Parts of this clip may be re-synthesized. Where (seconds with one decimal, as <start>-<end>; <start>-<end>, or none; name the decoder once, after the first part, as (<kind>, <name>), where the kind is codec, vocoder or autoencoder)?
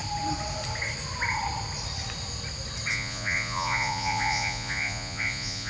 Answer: 2.9-5.7 (vocoder, Vocos)